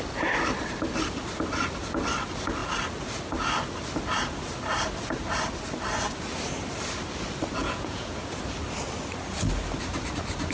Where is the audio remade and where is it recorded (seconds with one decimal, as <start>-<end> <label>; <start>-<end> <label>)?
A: 0.0-7.6 recorded; 7.6-8.3 remade; 8.3-10.5 recorded